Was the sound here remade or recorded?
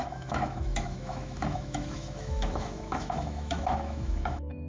remade